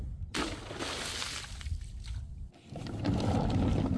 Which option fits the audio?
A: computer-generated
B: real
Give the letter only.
B